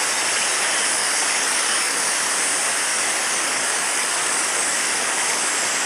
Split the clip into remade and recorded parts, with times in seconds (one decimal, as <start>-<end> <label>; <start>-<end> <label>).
0.0-1.0 recorded; 1.0-2.3 remade; 2.3-2.9 recorded; 2.9-5.5 remade; 5.5-5.9 recorded